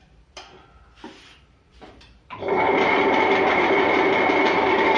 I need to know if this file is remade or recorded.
remade